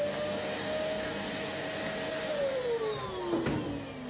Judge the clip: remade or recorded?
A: recorded